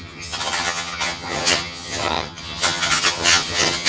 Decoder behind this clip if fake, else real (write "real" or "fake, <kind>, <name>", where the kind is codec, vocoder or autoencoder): fake, vocoder, HiFi-GAN